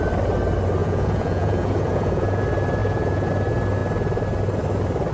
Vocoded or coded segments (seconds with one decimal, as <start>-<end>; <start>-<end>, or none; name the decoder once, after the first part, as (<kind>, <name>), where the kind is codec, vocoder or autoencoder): 0.8-2.4 (vocoder, Vocos); 2.8-3.3